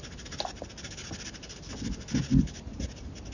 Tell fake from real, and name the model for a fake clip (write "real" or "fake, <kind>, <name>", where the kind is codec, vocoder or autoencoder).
real